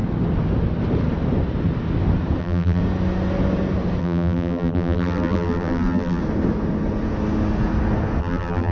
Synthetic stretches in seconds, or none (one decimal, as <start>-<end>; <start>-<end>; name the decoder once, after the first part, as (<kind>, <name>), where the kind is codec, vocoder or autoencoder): 2.4-2.8 (vocoder, BigVGAN v2); 4.0-6.2; 8.2-8.7